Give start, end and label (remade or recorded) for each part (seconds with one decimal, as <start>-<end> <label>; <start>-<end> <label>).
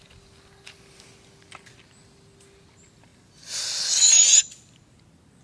0.0-5.4 recorded